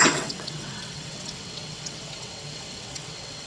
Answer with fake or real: fake